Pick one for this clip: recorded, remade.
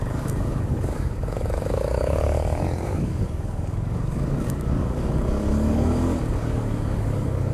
remade